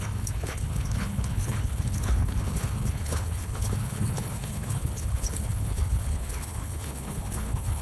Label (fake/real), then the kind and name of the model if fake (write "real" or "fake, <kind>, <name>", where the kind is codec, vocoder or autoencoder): fake, codec, HILCodec